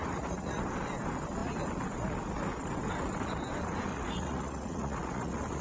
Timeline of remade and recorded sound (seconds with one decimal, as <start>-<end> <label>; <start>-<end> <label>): 0.0-0.6 remade; 0.6-3.9 recorded; 3.9-5.6 remade